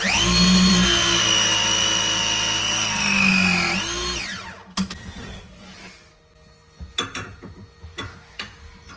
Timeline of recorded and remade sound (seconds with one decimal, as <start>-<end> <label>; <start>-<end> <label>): 0.0-2.6 recorded; 2.6-3.3 remade; 3.3-9.0 recorded